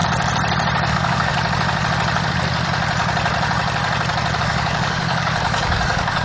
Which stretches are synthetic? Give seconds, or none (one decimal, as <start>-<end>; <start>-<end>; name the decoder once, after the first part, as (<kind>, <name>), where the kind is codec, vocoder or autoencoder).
0.9-1.3 (codec, DAC); 4.4-6.2

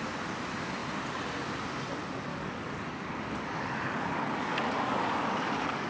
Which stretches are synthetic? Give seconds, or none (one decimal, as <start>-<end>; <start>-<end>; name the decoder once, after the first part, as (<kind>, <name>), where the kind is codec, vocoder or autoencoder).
2.3-5.9 (codec, DAC)